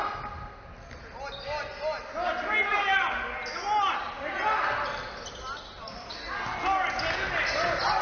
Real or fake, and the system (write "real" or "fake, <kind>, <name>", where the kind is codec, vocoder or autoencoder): real